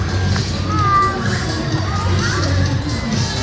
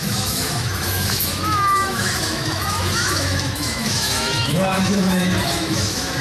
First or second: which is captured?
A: first